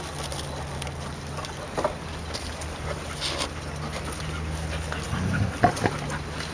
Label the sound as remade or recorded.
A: recorded